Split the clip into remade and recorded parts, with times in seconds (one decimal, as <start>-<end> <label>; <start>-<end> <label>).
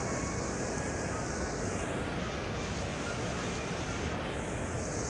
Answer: 0.0-5.1 recorded